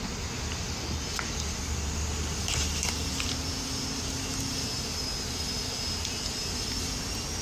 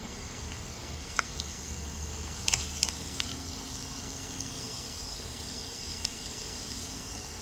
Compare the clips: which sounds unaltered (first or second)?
first